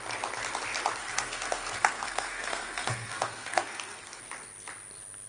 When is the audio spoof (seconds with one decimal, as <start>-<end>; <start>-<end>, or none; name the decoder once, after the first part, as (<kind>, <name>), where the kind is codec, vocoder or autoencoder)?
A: 1.0-4.2 (codec, SNAC)